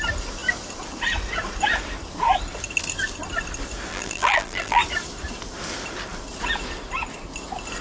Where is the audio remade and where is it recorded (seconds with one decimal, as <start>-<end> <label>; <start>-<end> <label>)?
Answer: 0.0-3.9 recorded; 3.9-4.8 remade; 4.8-7.8 recorded